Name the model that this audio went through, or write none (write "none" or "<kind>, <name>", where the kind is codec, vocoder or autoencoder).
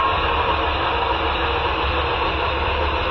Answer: none